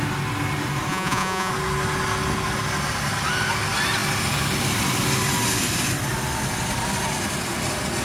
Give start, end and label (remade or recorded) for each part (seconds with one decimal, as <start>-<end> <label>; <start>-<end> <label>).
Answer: 0.0-0.9 recorded; 0.9-1.5 remade; 1.5-8.0 recorded